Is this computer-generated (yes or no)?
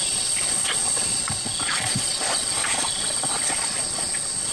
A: yes